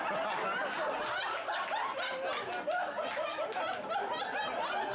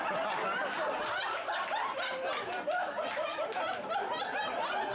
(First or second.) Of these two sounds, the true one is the first